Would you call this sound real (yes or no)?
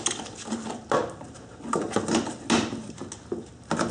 yes